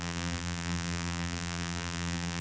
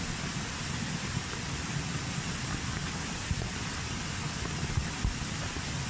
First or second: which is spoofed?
first